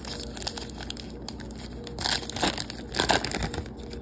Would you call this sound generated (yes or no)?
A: no